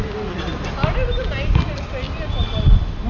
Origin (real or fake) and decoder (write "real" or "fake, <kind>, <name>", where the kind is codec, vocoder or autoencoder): real